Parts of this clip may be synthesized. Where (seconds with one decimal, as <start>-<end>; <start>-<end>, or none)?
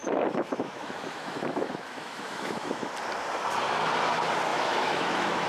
0.0-2.9; 4.5-5.5